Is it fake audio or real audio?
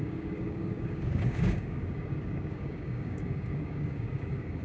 fake